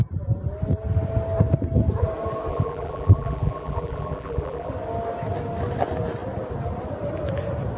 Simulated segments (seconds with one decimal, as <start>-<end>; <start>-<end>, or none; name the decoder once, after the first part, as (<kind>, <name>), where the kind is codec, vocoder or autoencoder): 2.5-4.7 (vocoder, BigVGAN v2)